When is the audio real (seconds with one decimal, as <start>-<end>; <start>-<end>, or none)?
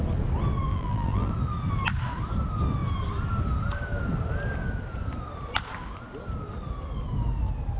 0.0-0.7; 1.3-7.8